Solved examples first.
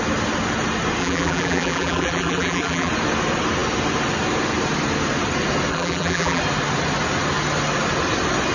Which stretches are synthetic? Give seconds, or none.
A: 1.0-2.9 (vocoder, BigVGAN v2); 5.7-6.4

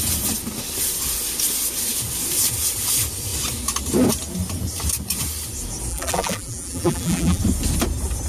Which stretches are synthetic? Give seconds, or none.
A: 5.9-7.4 (vocoder, BigVGAN v2)

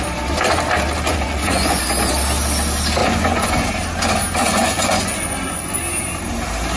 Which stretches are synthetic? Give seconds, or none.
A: 1.1-1.8 (vocoder, Vocos); 3.0-3.5; 4.4-5.8

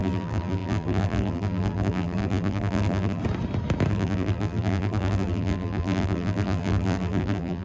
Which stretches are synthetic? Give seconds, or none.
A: 0.0-3.2 (vocoder, BigVGAN v2); 3.9-7.6

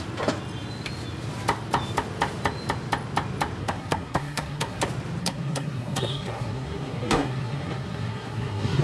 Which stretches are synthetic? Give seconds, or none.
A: 3.6-4.8 (codec, SNAC); 5.2-8.8